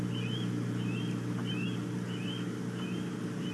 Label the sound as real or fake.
real